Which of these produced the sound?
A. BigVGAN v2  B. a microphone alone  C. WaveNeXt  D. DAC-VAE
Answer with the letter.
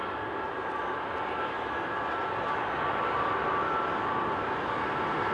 B